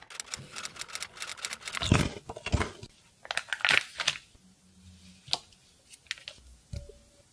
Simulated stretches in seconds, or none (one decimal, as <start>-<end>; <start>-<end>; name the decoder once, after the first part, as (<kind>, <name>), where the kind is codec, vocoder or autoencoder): none